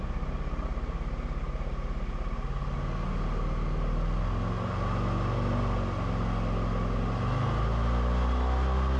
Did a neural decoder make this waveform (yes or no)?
no